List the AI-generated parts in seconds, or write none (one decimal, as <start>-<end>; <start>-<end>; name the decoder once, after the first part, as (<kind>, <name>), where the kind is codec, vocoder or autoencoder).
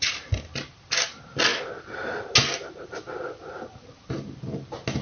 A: none